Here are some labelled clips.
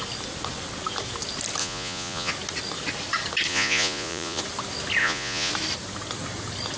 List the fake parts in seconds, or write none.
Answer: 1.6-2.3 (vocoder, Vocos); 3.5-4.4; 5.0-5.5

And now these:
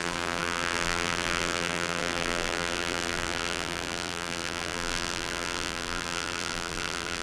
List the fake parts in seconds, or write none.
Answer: 0.0-7.2 (vocoder, BigVGAN v2)

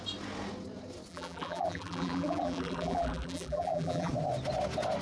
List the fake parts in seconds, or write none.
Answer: 1.1-4.1 (vocoder, BigVGAN v2)

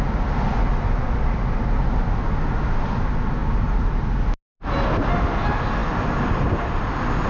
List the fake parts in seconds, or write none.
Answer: none

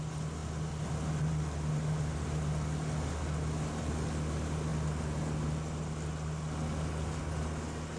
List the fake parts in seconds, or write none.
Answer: none

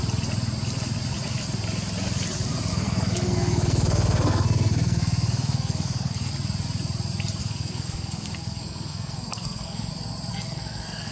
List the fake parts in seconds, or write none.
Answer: 2.7-6.3 (codec, SNAC); 7.4-9.9; 10.3-11.1

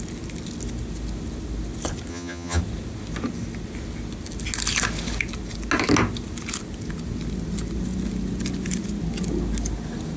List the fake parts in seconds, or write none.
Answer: 2.1-2.6 (vocoder, HiFi-GAN)